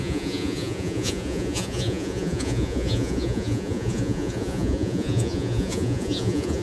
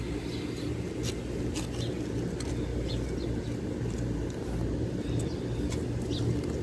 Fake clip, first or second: first